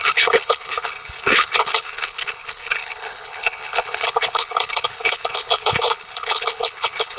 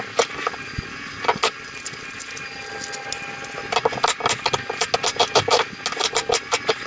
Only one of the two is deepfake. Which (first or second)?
first